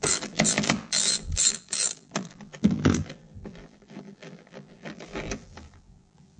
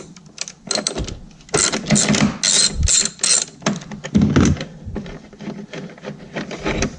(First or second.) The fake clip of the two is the first